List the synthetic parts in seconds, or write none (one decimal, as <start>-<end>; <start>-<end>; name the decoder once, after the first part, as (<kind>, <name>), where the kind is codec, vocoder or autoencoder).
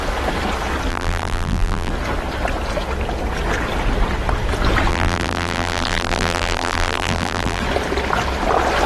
0.9-1.9 (vocoder, BigVGAN v2); 4.9-7.6